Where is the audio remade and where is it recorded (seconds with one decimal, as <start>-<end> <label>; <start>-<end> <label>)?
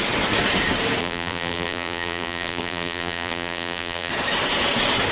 0.0-1.0 recorded; 1.0-4.1 remade; 4.1-5.1 recorded